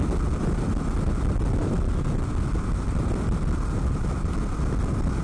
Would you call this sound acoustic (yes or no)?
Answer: yes